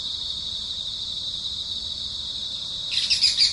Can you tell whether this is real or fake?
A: real